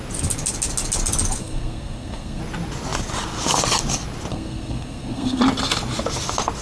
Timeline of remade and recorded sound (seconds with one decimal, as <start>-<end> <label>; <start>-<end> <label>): 0.0-1.4 recorded; 1.4-2.4 remade; 2.4-4.3 recorded; 4.3-5.4 remade; 5.4-6.6 recorded